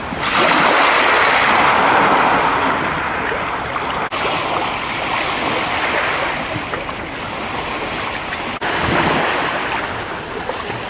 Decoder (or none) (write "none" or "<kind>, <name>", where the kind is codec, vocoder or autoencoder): none